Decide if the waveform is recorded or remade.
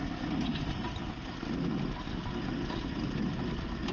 recorded